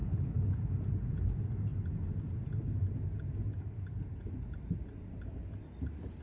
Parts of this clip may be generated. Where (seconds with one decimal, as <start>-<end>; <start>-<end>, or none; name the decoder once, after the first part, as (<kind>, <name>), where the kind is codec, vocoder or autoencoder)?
0.0-0.7 (codec, HILCodec)